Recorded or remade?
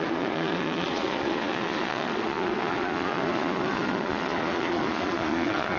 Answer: remade